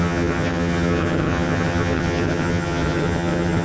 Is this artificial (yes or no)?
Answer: yes